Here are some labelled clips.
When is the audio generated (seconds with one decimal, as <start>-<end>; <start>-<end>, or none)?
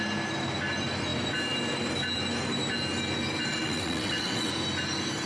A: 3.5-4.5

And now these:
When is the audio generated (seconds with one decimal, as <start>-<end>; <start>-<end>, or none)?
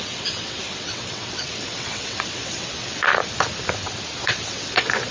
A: 0.0-3.1; 4.2-5.1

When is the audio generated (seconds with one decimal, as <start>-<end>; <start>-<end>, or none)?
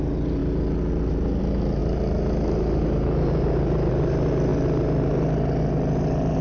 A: none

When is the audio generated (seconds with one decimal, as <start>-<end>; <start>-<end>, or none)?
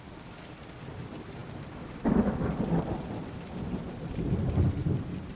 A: none